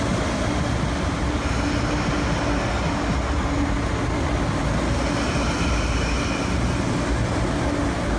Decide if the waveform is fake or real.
real